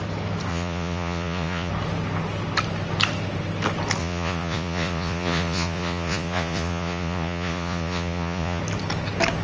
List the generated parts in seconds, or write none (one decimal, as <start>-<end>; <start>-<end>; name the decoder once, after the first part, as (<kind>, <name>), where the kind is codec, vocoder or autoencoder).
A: 0.5-1.7 (vocoder, Vocos); 4.0-8.6